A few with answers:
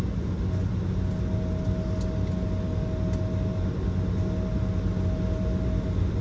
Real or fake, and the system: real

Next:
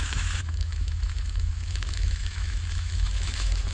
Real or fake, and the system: fake, autoencoder, DAC-VAE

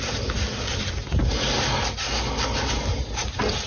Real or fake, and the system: real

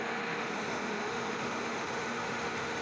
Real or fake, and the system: fake, autoencoder, DAC-VAE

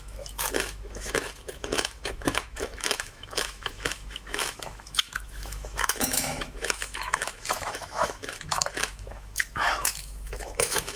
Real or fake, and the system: fake, autoencoder, DAC-VAE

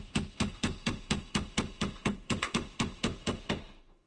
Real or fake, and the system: fake, autoencoder, DAC-VAE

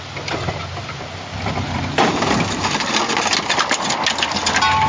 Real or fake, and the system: real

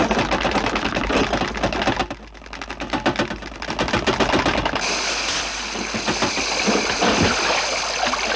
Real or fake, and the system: real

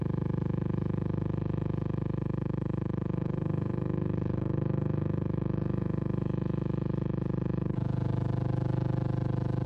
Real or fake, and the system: fake, autoencoder, DAC-VAE